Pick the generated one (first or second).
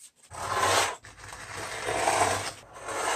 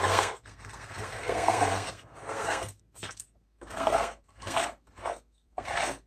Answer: second